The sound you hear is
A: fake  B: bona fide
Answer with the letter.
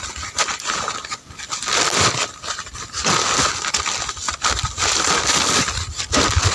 B